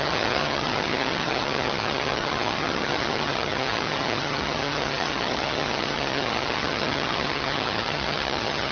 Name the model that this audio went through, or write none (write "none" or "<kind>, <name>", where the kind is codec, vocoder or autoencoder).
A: vocoder, HiFi-GAN